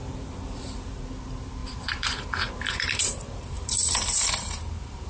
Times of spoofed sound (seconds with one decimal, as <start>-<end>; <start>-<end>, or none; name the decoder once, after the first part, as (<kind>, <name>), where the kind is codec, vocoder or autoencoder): 0.0-1.0 (vocoder, BigVGAN v2); 1.6-5.1